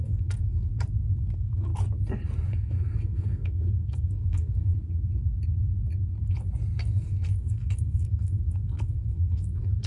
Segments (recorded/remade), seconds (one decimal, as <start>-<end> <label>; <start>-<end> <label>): 0.0-0.7 remade; 0.7-1.2 recorded; 1.2-1.7 remade; 1.7-2.5 recorded; 2.5-4.7 remade; 4.7-6.8 recorded; 6.8-9.9 remade

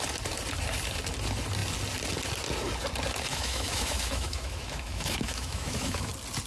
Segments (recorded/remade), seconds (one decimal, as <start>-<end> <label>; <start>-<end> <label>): 0.0-3.3 recorded; 3.3-6.1 remade; 6.1-6.5 recorded

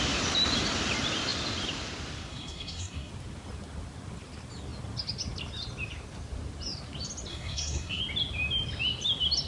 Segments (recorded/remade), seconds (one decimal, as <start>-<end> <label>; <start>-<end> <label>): 0.0-2.3 recorded; 2.3-3.1 remade; 3.1-7.3 recorded; 7.3-8.0 remade; 8.0-9.5 recorded

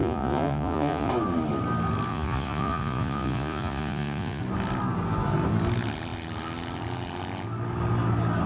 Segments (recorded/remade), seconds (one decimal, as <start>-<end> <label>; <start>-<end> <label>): 0.0-1.1 remade; 1.1-2.1 recorded; 2.1-4.4 remade; 4.4-8.5 recorded

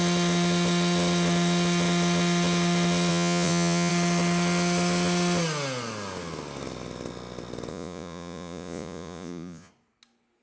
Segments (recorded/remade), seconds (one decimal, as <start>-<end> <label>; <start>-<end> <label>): 0.0-3.1 recorded; 3.1-3.9 remade; 3.9-7.7 recorded; 7.7-9.7 remade; 9.7-10.4 recorded

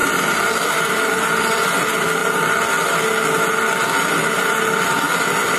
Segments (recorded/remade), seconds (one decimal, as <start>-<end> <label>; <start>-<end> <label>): 0.0-5.6 recorded

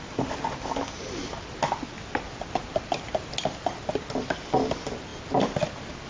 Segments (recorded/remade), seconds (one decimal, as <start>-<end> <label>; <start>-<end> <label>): 0.0-6.1 recorded